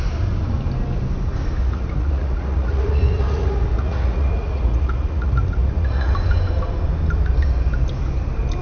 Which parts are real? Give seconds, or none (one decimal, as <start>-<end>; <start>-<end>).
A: 0.0-1.6; 6.1-8.6